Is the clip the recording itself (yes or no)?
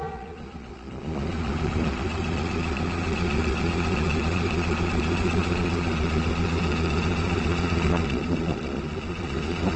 no